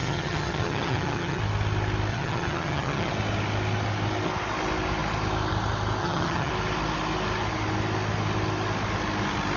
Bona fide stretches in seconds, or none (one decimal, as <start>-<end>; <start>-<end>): 1.4-2.1; 3.1-6.0; 6.5-9.6